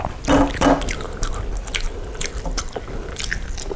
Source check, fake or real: real